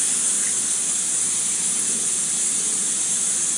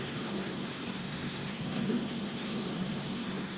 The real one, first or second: first